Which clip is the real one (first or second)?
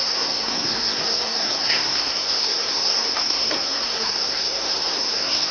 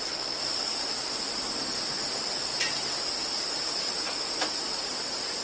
second